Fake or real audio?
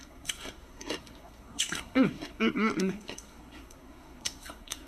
fake